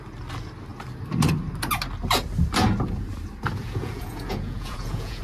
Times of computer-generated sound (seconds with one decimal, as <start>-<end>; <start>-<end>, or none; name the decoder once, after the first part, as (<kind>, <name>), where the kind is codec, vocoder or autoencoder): 3.6-5.2 (vocoder, Vocos)